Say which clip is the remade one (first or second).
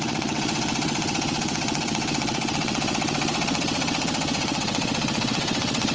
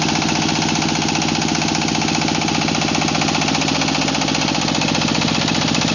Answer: first